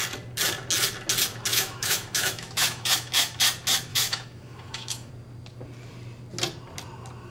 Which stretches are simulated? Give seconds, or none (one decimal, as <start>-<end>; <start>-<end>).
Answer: 1.5-3.4; 3.9-5.1